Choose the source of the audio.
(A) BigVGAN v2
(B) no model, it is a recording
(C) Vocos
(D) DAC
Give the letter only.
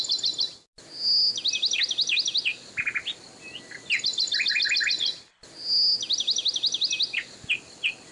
B